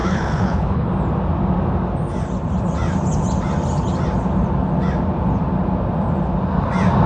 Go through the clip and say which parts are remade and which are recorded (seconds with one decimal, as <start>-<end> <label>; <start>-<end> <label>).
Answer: 0.0-0.9 remade; 0.9-7.1 recorded